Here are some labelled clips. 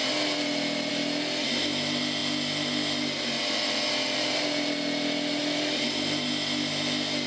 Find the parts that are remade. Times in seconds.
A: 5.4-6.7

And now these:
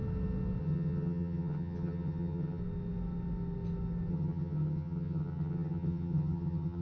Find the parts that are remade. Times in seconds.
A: 0.6-2.6; 4.1-6.8

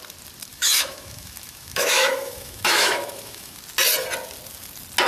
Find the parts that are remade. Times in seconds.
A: 0.5-3.6

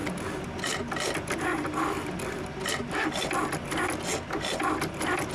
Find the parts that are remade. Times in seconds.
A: none

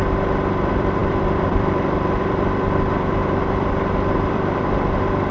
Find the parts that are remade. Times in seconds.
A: 0.0-5.3

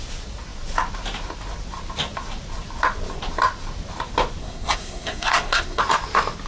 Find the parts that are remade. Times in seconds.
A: 4.4-5.8

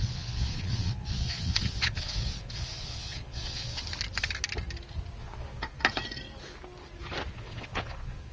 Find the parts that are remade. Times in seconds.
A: 0.0-3.8; 5.2-5.7; 7.3-8.3